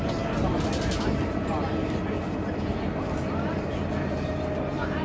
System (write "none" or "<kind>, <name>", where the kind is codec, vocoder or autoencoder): none